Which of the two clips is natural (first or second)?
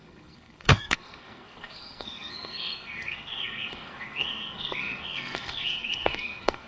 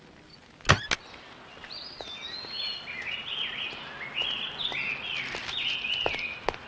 second